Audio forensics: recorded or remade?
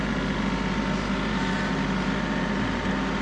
recorded